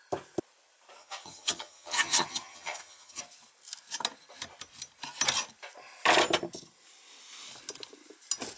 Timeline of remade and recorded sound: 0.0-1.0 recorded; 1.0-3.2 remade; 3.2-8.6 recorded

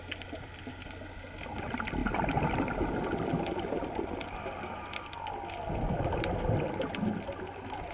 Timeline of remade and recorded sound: 0.0-7.9 recorded

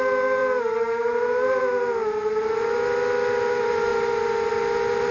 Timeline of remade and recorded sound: 0.0-5.1 recorded

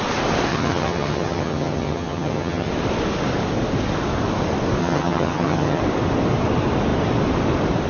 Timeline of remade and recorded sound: 0.0-0.5 recorded; 0.5-2.7 remade; 2.7-4.8 recorded; 4.8-5.8 remade; 5.8-7.9 recorded

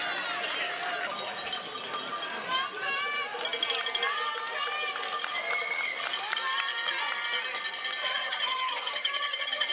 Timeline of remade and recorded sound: 0.0-8.0 recorded; 8.0-9.7 remade

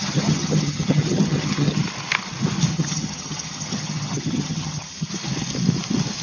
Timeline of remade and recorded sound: 0.0-1.8 remade; 1.8-2.7 recorded; 2.7-5.1 remade; 5.1-6.2 recorded